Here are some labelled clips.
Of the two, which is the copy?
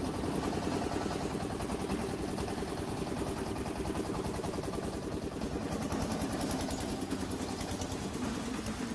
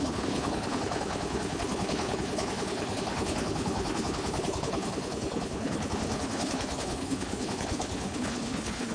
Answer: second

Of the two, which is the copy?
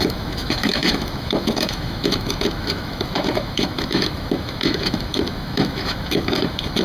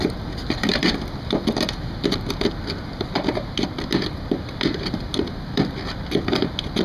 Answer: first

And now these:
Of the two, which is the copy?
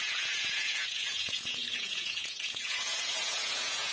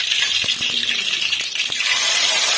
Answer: first